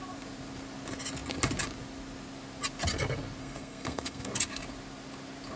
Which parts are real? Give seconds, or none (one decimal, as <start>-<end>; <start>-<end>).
0.0-3.4; 4.3-5.6